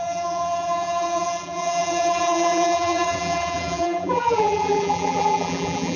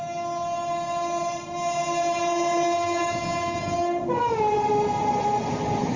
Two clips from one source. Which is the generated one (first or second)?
first